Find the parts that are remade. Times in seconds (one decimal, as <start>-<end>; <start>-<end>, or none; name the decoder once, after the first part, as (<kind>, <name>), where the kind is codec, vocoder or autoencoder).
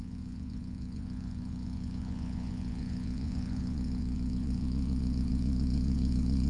0.0-6.5 (vocoder, Vocos)